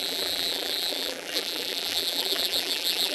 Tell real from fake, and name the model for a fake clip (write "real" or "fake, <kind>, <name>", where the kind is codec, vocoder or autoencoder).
fake, vocoder, BigVGAN v2